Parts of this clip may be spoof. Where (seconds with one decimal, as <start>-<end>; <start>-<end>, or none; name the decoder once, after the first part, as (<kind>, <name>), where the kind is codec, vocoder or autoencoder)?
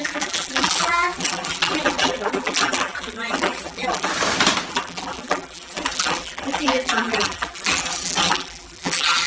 0.0-4.1 (vocoder, BigVGAN v2); 4.7-9.3